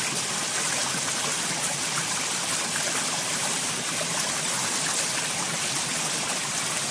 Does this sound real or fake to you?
real